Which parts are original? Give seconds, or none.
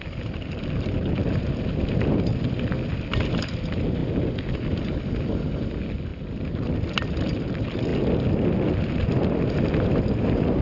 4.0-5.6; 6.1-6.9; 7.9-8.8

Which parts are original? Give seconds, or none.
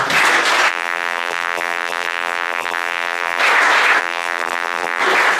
0.0-0.7; 3.4-4.0; 5.0-5.4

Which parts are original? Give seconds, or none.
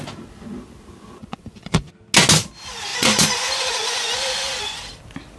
0.0-1.2; 1.9-2.9; 4.8-5.4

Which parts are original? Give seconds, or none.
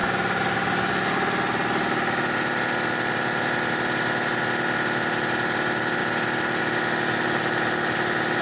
0.0-8.4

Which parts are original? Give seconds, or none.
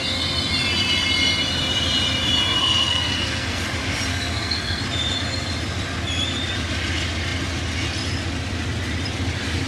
0.0-2.6; 3.6-4.1; 4.8-9.7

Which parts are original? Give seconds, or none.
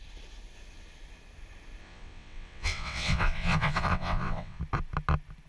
0.0-1.8; 4.6-5.5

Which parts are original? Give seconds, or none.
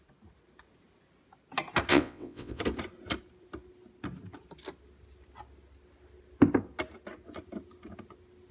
0.0-1.9; 2.6-8.5